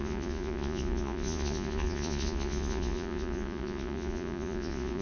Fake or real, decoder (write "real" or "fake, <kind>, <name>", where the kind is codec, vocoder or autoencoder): fake, vocoder, Vocos